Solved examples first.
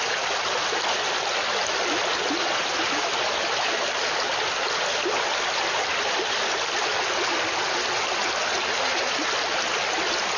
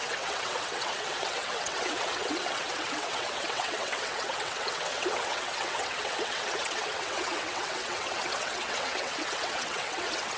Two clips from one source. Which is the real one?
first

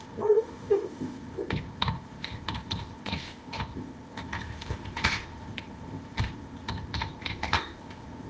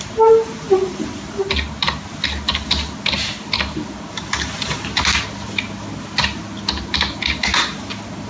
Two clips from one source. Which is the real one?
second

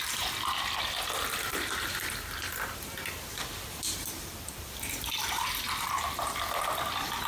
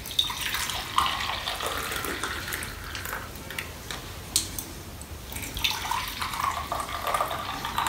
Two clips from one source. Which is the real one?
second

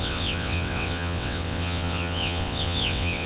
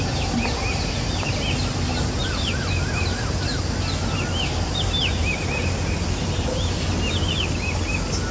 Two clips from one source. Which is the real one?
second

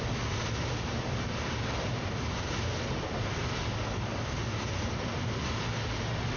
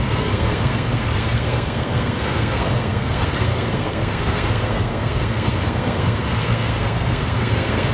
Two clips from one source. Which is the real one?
first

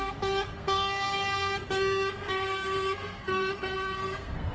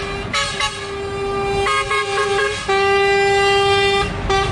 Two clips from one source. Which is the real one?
second